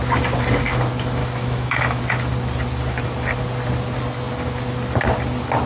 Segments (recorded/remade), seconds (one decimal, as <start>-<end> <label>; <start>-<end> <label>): 0.0-1.2 recorded; 1.2-2.0 remade; 2.0-5.7 recorded